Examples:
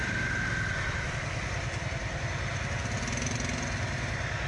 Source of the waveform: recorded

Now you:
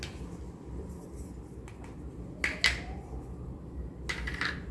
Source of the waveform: recorded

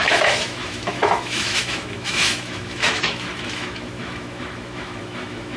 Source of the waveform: remade